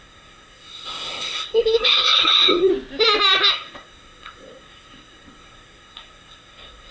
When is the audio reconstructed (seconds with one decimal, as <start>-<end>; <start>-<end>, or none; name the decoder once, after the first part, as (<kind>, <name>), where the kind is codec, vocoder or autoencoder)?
0.0-2.7 (codec, SNAC); 3.5-6.9